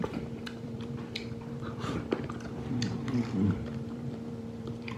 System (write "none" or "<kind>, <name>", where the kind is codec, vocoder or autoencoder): vocoder, BigVGAN v2